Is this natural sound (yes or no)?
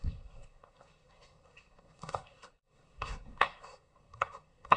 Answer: no